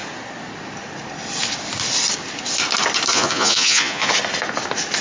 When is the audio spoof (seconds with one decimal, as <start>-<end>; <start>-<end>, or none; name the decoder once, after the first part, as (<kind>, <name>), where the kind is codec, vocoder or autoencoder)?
3.1-4.1 (vocoder, Vocos)